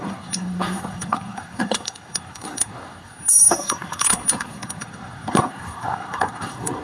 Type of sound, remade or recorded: remade